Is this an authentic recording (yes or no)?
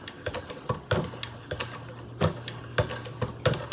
yes